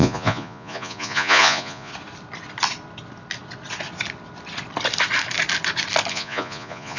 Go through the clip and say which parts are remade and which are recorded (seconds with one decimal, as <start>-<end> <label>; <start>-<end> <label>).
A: 0.0-1.9 remade; 1.9-6.1 recorded; 6.1-7.0 remade